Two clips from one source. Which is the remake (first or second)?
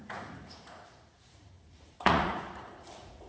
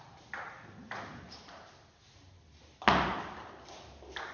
first